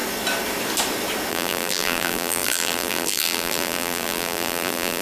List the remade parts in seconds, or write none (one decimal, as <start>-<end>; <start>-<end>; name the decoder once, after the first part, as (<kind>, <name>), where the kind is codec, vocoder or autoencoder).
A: 1.3-5.0 (vocoder, BigVGAN v2)